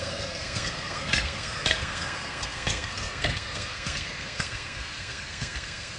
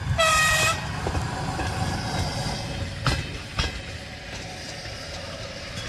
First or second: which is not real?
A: first